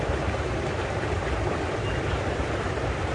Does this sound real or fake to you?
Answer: real